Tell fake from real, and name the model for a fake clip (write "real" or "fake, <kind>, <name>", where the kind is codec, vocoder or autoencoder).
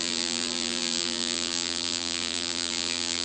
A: fake, vocoder, BigVGAN v2